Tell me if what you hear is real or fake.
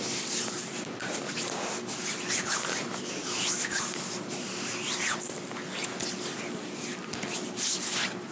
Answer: real